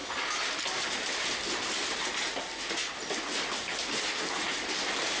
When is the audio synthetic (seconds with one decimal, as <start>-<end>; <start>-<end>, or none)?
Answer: none